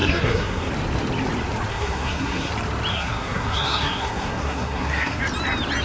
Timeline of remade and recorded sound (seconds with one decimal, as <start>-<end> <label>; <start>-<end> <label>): 0.0-0.7 remade; 0.7-1.7 recorded; 1.7-2.5 remade; 2.5-2.9 recorded; 2.9-5.2 remade; 5.2-5.8 recorded